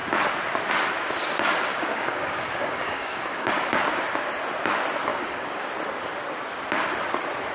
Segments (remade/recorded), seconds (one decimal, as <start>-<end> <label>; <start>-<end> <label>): 0.0-1.7 recorded; 1.7-3.5 remade; 3.5-5.1 recorded; 5.1-5.7 remade; 5.7-7.5 recorded